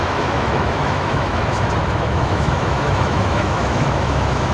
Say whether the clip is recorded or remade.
remade